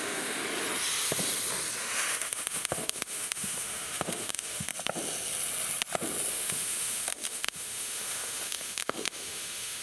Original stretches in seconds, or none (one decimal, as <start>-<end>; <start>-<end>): 0.4-1.8; 4.7-6.3